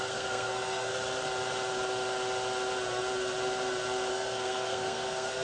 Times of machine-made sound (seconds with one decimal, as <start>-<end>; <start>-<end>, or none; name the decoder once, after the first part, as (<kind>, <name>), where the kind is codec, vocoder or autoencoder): 0.0-0.9 (codec, SNAC); 4.1-5.4